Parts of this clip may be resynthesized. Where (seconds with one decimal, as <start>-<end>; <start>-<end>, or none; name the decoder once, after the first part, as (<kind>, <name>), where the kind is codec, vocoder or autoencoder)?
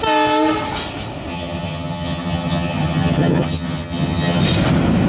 1.3-4.4 (vocoder, HiFi-GAN)